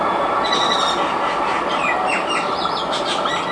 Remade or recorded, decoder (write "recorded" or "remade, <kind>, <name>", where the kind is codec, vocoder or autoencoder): recorded